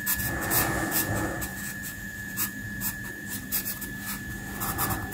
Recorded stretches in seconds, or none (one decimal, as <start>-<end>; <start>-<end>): 0.0-1.5; 3.8-5.1